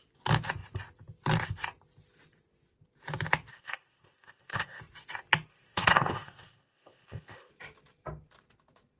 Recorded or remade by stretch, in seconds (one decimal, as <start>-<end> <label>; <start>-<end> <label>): 0.0-3.5 recorded; 3.5-4.8 remade; 4.8-5.5 recorded; 5.5-7.5 remade; 7.5-9.0 recorded